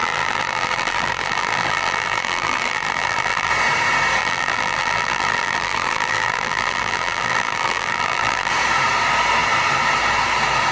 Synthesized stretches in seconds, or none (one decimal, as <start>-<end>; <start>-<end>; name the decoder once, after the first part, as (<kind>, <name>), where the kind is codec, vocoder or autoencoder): 0.0-3.5 (vocoder, BigVGAN v2); 4.2-8.5